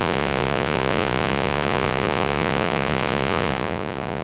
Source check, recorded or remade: remade